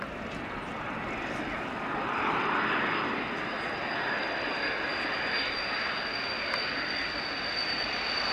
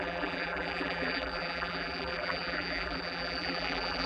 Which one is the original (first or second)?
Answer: first